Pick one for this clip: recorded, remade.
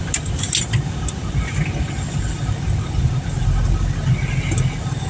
recorded